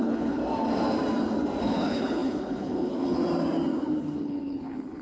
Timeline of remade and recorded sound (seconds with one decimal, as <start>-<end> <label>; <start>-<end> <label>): 0.0-0.4 remade; 0.4-1.6 recorded; 1.6-3.2 remade; 3.2-3.8 recorded; 3.8-5.0 remade